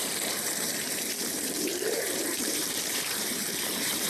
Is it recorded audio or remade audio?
remade